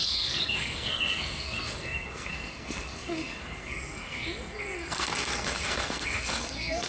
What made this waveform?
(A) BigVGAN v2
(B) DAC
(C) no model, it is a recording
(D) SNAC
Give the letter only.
D